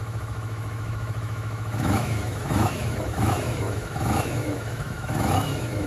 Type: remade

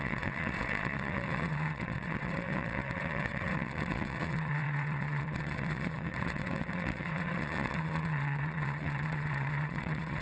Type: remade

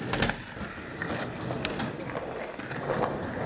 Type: recorded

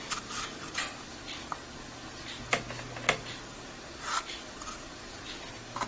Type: recorded